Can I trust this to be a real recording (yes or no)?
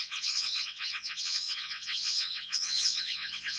no